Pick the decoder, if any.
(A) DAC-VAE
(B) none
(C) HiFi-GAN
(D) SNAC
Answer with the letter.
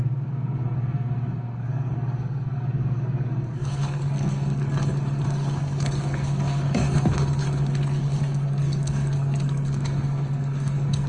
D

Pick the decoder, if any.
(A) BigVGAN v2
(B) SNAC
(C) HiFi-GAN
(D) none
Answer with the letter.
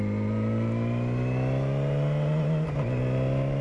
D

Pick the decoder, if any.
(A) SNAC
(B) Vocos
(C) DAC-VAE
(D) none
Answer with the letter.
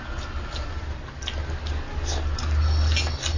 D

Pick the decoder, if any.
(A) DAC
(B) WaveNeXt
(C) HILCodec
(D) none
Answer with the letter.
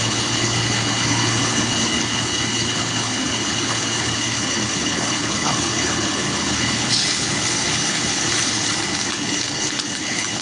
C